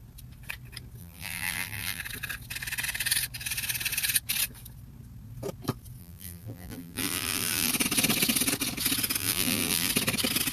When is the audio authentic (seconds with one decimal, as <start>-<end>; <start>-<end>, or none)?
0.0-1.0; 2.0-6.0; 7.7-9.2; 9.9-10.5